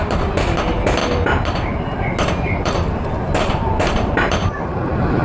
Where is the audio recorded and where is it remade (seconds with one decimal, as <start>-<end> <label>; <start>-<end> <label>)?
0.0-1.0 remade; 1.0-2.6 recorded; 2.6-5.2 remade